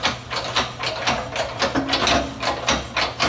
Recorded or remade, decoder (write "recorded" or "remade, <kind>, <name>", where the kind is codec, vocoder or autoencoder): recorded